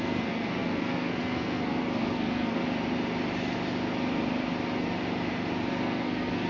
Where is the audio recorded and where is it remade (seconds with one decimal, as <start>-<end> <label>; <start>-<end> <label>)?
0.0-2.6 remade; 2.6-5.7 recorded; 5.7-6.5 remade